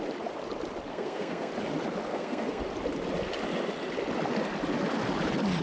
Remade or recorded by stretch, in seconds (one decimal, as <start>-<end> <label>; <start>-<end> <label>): 0.0-0.9 recorded; 0.9-1.5 remade; 1.5-2.1 recorded; 2.1-2.6 remade; 2.6-5.6 recorded